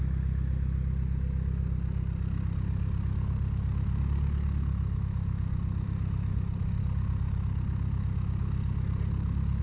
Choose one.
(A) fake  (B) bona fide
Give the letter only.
B